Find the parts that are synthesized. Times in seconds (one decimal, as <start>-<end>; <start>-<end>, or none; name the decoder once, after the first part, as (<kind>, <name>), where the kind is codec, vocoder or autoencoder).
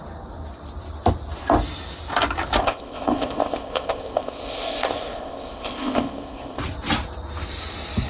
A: 2.6-6.6 (codec, ZipCodec)